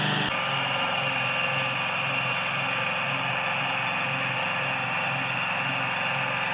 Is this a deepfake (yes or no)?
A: no